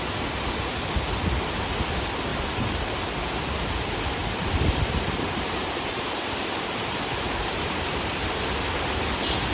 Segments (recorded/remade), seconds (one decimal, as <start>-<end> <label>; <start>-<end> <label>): 0.0-2.3 recorded; 2.3-3.1 remade; 3.1-4.2 recorded; 4.2-7.9 remade; 7.9-9.5 recorded